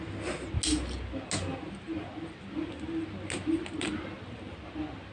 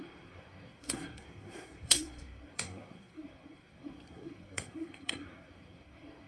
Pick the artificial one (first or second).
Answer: second